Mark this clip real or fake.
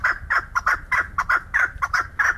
fake